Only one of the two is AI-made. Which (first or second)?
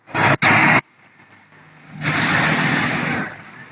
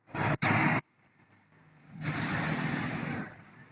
second